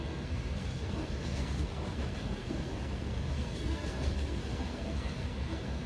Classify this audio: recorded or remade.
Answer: remade